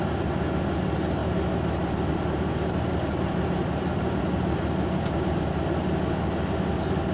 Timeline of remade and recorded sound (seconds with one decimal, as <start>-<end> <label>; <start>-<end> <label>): 0.0-1.2 recorded; 1.2-5.4 remade; 5.4-7.1 recorded